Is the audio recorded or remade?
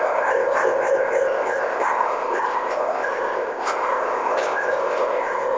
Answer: remade